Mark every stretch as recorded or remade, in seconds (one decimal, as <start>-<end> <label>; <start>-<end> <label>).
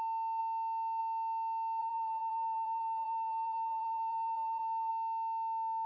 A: 0.0-1.8 recorded; 1.8-4.9 remade; 4.9-5.9 recorded